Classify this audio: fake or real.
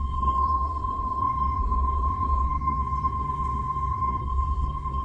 fake